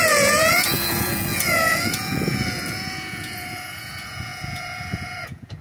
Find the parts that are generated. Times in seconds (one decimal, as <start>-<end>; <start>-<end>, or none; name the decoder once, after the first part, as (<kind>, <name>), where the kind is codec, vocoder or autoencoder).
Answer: 0.0-5.6 (vocoder, Vocos)